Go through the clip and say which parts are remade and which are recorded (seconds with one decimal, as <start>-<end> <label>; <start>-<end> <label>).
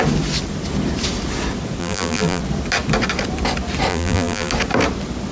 0.0-1.8 recorded; 1.8-2.4 remade; 2.4-3.9 recorded; 3.9-4.5 remade; 4.5-5.3 recorded